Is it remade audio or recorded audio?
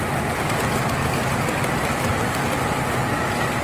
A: recorded